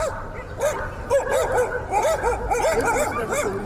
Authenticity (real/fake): fake